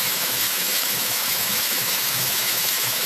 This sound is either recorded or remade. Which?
remade